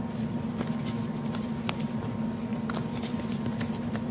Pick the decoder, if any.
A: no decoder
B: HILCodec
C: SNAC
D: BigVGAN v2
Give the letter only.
A